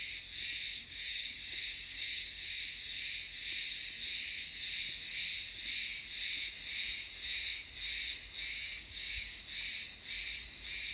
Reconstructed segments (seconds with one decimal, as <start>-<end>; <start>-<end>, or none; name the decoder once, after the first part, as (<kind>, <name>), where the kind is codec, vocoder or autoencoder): 0.7-2.6 (codec, DAC); 8.5-9.4